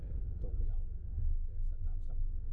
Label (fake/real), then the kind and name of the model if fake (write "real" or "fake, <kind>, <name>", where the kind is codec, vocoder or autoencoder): real